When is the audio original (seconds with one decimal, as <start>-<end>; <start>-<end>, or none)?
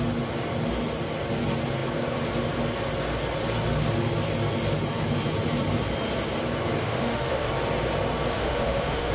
0.0-6.8; 7.5-8.3